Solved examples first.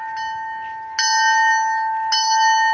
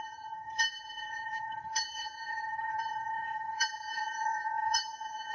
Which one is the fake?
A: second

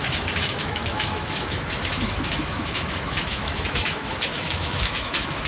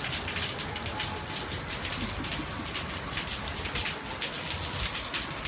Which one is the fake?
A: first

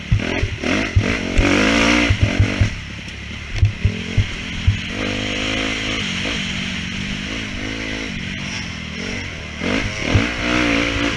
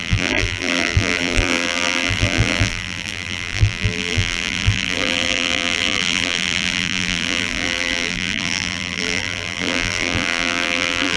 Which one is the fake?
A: second